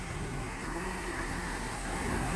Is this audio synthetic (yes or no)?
yes